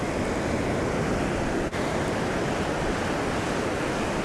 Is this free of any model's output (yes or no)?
yes